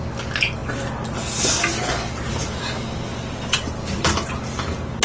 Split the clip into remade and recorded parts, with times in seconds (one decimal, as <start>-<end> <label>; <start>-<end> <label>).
0.0-3.1 recorded; 3.1-4.3 remade; 4.3-5.0 recorded